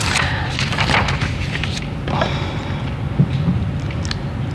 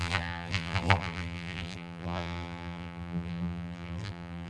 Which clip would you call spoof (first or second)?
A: second